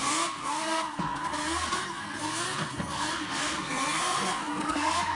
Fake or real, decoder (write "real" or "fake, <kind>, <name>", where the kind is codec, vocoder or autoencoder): fake, codec, SNAC